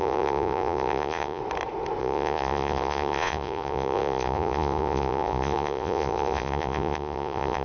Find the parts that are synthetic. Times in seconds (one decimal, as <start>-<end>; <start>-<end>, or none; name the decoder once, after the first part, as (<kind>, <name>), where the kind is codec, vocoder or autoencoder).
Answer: 0.0-1.4 (vocoder, Vocos); 2.0-7.6